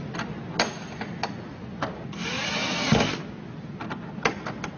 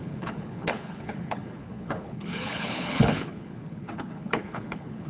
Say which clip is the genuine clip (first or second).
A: first